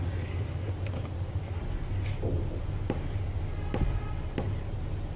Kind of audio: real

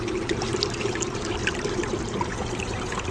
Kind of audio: real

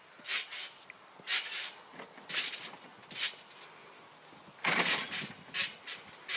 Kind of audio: real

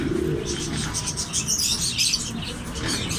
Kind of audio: real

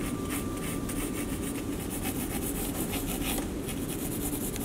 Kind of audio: real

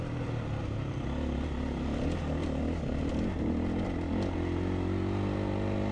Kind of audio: real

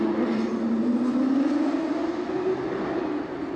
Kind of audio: real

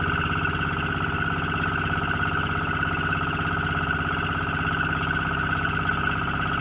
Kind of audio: real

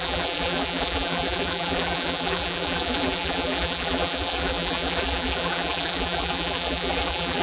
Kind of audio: fake